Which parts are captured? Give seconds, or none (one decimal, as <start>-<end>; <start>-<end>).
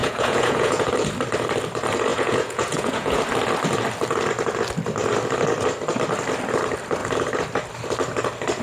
0.9-2.1; 3.2-8.6